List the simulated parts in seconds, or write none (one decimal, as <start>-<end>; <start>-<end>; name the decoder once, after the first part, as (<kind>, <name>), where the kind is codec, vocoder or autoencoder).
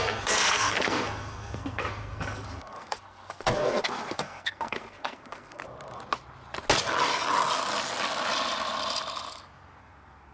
0.0-5.6 (codec, SNAC); 9.8-10.3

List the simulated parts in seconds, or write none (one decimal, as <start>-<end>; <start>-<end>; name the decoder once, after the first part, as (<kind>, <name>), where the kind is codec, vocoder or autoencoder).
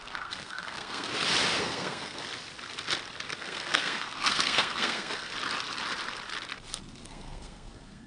0.0-1.1 (codec, SNAC); 1.6-2.2; 3.4-5.3; 7.0-8.1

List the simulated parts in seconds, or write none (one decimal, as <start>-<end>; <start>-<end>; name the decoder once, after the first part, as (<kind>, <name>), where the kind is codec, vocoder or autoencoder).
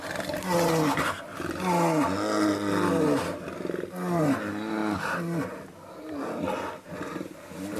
none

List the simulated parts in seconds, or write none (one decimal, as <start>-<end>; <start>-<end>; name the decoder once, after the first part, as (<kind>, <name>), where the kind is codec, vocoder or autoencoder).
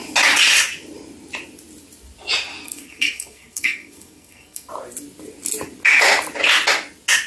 2.6-4.7 (codec, SNAC)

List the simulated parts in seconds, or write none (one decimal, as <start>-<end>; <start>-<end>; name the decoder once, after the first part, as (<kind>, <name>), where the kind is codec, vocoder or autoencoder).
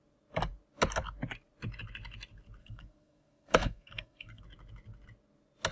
2.6-4.4 (codec, SNAC)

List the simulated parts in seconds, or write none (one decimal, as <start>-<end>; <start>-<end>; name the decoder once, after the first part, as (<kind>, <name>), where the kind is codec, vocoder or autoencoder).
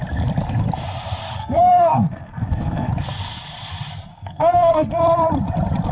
1.4-2.9 (codec, SNAC); 4.1-4.9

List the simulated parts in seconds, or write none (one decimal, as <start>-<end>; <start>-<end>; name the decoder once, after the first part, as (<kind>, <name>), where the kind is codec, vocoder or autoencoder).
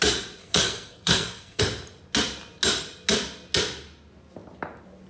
0.4-1.6 (codec, SNAC)